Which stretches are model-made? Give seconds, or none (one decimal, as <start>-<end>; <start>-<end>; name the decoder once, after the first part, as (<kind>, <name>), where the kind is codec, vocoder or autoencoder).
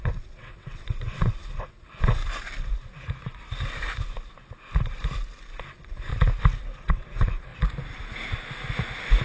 0.0-2.2 (vocoder, WaveNeXt); 5.6-6.1; 6.8-7.5